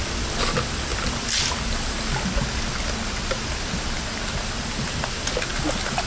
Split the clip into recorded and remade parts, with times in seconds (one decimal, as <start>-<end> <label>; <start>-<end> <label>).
0.0-6.1 recorded